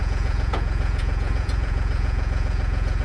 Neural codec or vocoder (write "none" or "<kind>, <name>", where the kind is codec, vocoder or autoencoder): vocoder, Vocos